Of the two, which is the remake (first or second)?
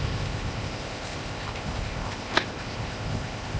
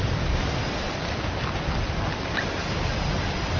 first